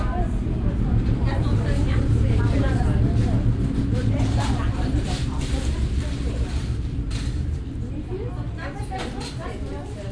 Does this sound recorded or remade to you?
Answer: remade